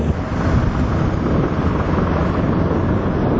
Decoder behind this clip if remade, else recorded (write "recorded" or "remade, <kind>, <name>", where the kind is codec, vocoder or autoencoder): recorded